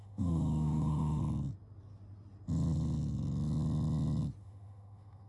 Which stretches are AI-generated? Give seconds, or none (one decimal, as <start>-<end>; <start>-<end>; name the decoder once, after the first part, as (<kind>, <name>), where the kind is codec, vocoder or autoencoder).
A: 0.0-1.2 (autoencoder, DAC-VAE); 4.4-5.3